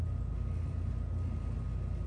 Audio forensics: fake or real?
real